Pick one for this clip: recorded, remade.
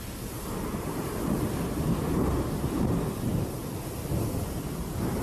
recorded